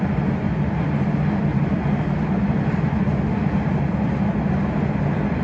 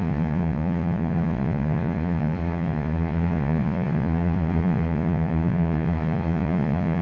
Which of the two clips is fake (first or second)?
second